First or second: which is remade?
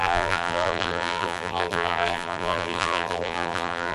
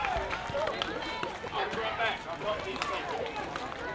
first